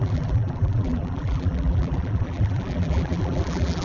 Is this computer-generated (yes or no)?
yes